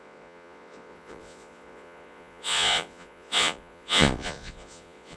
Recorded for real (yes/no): no